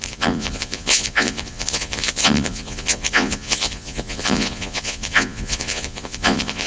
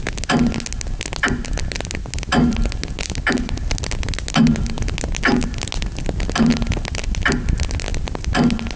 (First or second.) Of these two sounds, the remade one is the first